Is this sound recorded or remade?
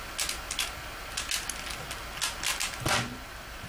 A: recorded